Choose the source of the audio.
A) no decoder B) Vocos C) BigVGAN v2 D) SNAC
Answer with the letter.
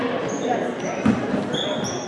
A